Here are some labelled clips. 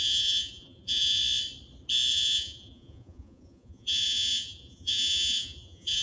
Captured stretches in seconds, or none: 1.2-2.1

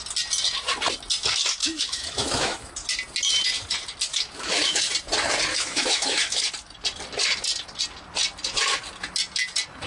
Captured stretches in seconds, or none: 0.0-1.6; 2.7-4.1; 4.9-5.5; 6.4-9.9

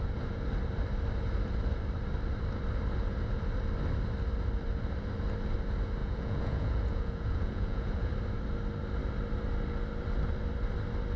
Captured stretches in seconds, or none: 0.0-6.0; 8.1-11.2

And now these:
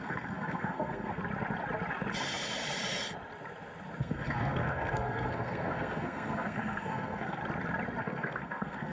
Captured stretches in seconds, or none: 1.2-4.0; 7.4-8.0

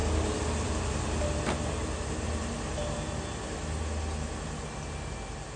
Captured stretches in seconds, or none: 0.9-5.6